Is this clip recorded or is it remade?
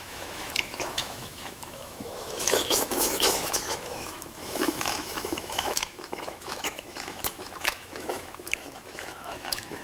remade